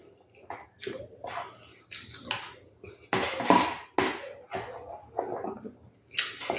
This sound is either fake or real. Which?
real